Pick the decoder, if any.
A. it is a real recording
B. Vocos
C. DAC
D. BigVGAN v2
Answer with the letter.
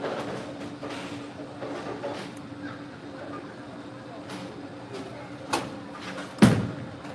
A